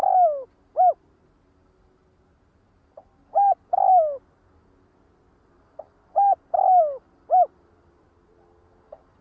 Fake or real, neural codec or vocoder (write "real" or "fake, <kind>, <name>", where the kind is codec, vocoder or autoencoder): real